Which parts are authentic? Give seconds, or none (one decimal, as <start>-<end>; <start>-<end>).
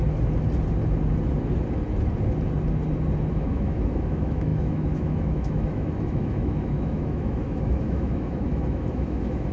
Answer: 0.0-3.3